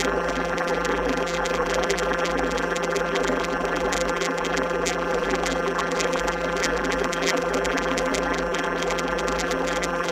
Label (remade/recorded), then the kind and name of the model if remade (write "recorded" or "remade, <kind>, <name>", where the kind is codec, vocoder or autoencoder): remade, vocoder, BigVGAN v2